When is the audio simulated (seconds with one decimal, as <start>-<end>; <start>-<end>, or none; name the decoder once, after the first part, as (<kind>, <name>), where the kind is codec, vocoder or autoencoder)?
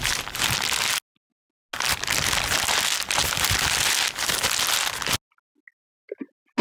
none